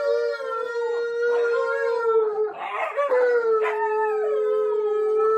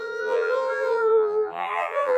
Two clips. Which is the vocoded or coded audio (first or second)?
second